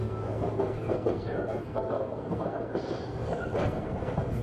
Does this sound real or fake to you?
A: fake